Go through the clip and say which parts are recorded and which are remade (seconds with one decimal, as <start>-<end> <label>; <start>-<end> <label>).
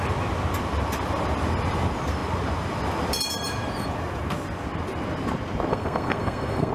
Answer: 0.0-5.7 recorded; 5.7-6.7 remade